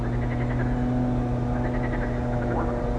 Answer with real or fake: real